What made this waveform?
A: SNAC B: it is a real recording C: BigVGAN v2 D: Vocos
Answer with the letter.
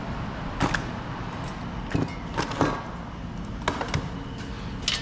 B